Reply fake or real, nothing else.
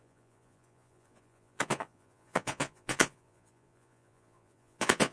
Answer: fake